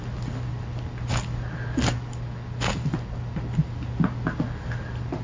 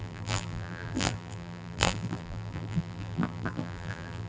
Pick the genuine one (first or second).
first